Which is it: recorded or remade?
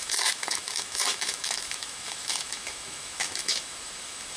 remade